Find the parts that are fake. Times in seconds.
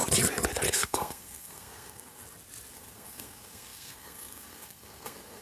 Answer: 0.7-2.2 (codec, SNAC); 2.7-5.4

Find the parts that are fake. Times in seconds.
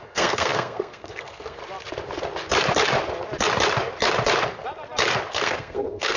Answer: 0.0-1.6 (codec, SNAC); 5.3-6.2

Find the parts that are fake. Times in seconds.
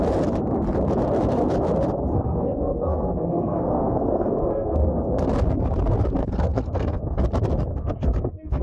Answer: 2.1-5.3 (codec, SNAC); 6.2-7.2; 7.7-8.6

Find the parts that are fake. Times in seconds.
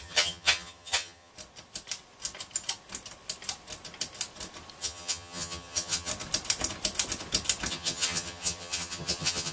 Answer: 0.0-1.3 (vocoder, HiFi-GAN); 4.8-6.1; 7.7-9.5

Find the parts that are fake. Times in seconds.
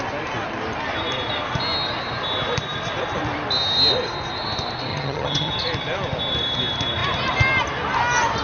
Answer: 4.9-5.5 (vocoder, HiFi-GAN)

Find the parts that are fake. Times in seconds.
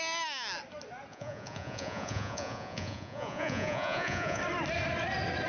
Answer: 1.1-4.4 (vocoder, Vocos)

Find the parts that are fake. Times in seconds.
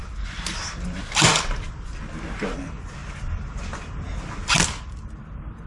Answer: none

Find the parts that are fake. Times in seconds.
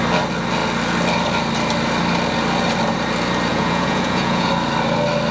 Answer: 3.5-4.5 (vocoder, Vocos)